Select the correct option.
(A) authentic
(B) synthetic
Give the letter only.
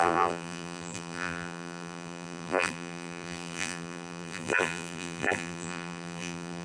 B